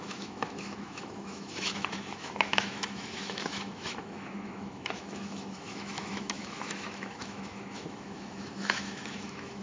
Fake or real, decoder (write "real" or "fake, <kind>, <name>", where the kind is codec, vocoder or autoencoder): fake, autoencoder, DAC-VAE